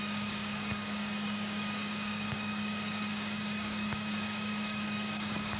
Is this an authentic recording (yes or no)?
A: no